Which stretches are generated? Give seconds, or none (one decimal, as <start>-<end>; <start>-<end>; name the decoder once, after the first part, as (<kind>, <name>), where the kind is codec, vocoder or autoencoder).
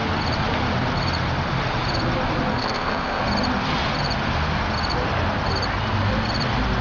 2.5-3.2 (codec, SNAC)